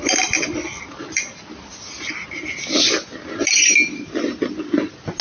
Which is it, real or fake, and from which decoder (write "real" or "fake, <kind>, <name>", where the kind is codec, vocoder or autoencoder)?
real